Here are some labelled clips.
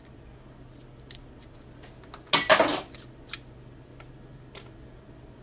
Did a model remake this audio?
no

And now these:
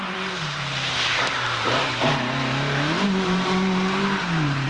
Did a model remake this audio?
yes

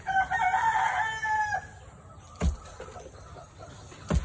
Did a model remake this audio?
no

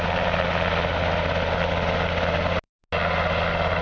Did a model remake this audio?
no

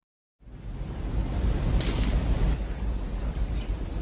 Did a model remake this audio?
no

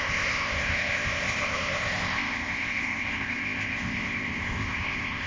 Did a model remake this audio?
yes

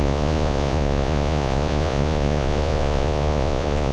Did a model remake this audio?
yes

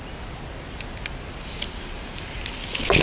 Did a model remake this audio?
no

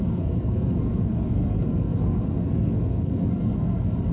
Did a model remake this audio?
yes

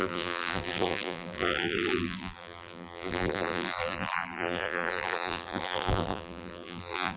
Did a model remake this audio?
yes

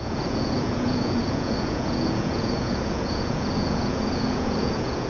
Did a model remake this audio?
yes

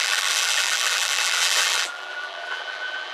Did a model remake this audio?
yes